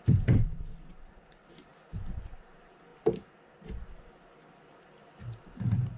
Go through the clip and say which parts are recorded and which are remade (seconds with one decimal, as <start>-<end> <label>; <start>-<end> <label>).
0.0-1.7 remade; 1.7-2.3 recorded; 2.3-2.9 remade; 2.9-5.5 recorded; 5.5-6.0 remade